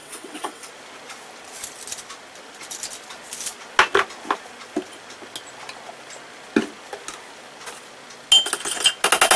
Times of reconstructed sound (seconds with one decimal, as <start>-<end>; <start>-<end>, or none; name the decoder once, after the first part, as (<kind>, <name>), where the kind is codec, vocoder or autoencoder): 0.0-0.7 (vocoder, WaveNeXt)